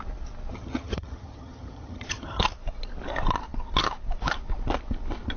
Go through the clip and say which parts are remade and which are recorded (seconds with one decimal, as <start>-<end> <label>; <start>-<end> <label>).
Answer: 0.0-0.5 recorded; 0.5-2.4 remade; 2.4-5.4 recorded